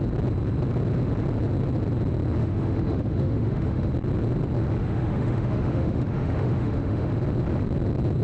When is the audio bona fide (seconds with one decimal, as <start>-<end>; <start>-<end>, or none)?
0.0-2.4; 3.9-4.8; 7.1-8.2